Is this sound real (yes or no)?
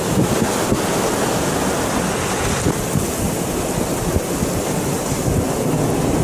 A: yes